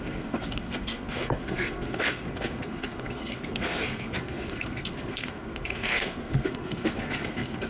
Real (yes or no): no